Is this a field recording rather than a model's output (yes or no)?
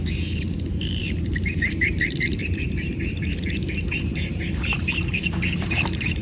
no